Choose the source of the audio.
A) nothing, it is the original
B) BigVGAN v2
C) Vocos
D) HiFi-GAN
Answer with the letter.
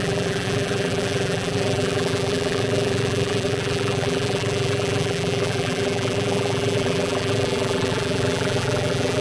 B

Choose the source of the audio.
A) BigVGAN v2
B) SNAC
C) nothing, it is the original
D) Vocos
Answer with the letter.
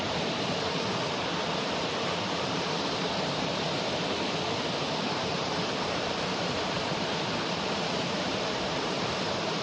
A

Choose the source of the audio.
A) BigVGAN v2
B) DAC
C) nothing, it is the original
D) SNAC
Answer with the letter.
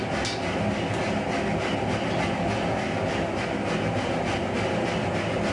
C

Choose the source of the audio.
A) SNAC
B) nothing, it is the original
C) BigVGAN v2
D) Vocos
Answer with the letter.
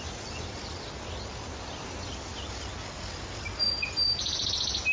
B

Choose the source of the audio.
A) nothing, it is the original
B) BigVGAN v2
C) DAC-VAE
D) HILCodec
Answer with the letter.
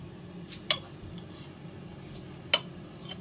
A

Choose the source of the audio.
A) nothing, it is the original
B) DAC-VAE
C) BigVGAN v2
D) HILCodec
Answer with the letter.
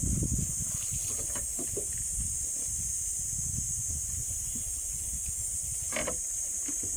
A